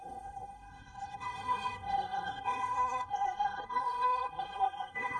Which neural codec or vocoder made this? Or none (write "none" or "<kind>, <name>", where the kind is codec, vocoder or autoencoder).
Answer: codec, SNAC